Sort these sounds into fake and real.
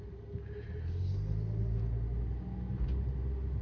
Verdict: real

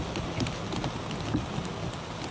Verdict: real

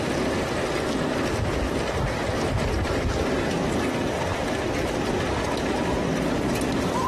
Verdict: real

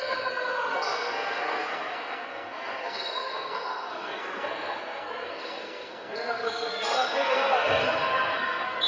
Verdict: fake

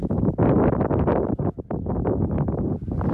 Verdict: real